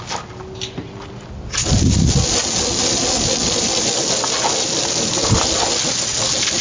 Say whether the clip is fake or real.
real